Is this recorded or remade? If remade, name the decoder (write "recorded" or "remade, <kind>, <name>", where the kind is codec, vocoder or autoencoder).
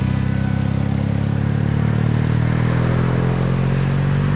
recorded